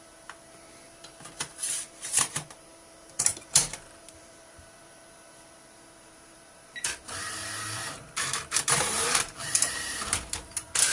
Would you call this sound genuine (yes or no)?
no